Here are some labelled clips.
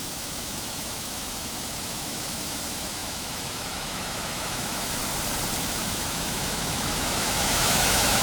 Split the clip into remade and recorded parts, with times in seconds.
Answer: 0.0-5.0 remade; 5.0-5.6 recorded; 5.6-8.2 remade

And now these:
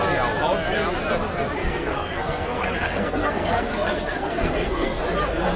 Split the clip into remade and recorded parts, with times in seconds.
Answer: 0.0-1.6 recorded; 1.6-5.0 remade; 5.0-5.6 recorded

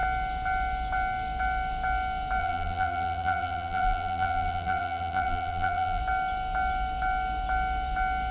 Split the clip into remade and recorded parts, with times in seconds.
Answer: 0.0-2.4 recorded; 2.4-6.0 remade; 6.0-8.3 recorded

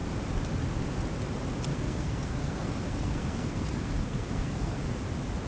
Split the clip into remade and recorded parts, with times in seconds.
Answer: 0.0-1.7 recorded; 1.7-5.0 remade; 5.0-5.5 recorded

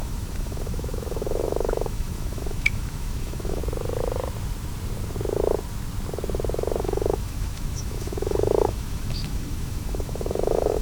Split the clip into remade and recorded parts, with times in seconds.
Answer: 0.0-3.6 remade; 3.6-6.8 recorded; 6.8-10.8 remade

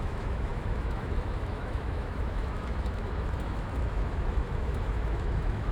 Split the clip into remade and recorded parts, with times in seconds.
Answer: 0.0-5.7 remade